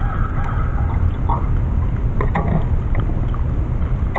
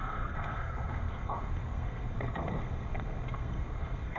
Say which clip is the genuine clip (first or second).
first